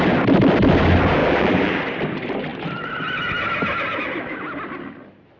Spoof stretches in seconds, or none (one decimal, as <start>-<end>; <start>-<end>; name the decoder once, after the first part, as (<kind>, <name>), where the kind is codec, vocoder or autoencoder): 1.2-1.8 (vocoder, BigVGAN v2)